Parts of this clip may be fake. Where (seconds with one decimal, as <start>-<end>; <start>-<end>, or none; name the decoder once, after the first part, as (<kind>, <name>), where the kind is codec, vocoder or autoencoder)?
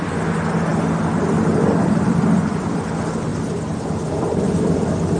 none